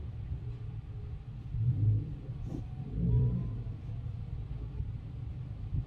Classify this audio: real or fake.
fake